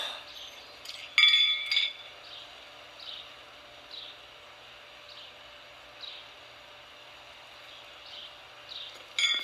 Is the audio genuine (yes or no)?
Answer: yes